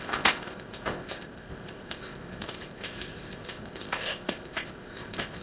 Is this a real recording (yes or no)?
no